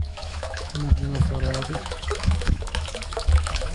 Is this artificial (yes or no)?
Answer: yes